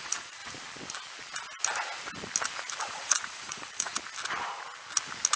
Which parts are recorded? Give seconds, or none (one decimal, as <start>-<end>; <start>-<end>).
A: 0.4-2.8; 3.9-5.4